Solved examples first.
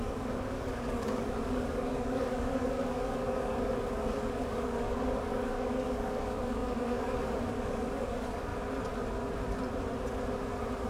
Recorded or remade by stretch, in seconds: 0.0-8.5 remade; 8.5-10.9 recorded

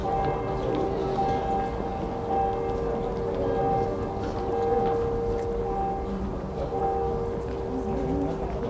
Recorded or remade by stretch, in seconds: 0.0-6.3 recorded; 6.3-6.8 remade; 6.8-8.7 recorded